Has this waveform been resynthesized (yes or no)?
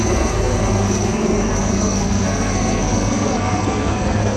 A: yes